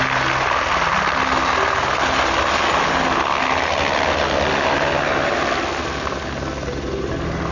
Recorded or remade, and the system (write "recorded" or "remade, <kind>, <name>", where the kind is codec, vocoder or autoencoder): recorded